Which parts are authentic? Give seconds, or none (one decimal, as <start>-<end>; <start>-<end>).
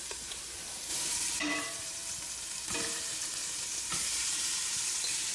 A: none